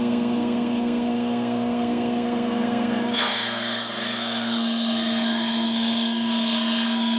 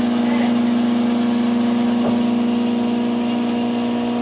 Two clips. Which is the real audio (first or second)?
second